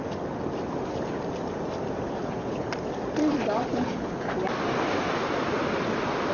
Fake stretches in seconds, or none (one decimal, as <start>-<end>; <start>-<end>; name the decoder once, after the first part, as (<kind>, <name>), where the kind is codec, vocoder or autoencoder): 2.2-2.7 (codec, HILCodec); 3.7-4.3